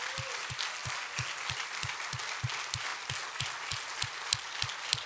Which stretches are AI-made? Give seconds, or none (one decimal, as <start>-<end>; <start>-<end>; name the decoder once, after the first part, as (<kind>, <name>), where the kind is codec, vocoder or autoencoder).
none